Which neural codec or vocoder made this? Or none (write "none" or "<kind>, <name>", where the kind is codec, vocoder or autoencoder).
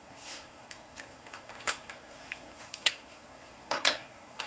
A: codec, SNAC